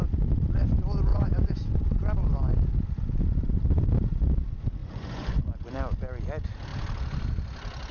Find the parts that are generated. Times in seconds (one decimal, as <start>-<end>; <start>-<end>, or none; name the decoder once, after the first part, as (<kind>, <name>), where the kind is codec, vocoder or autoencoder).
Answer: 1.1-1.7 (vocoder, Vocos); 4.8-5.5